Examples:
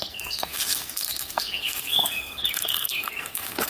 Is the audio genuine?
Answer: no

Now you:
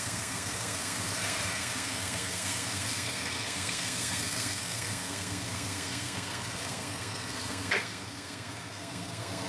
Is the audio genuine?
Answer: no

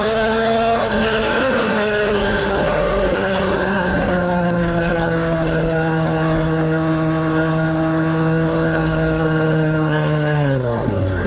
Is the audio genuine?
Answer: no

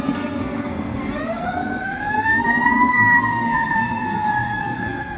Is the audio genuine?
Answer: no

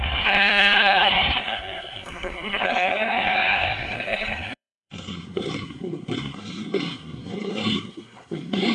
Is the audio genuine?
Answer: no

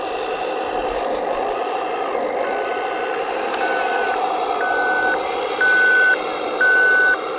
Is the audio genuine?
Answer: yes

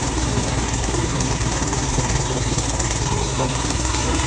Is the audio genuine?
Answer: no